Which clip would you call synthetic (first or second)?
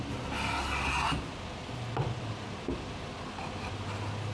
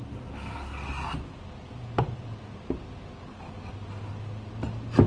second